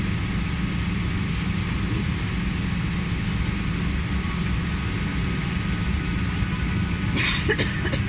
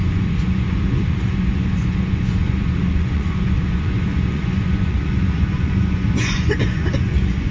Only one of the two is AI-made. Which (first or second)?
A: second